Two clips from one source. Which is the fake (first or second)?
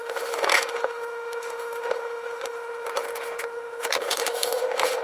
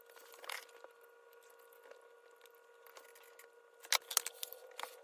first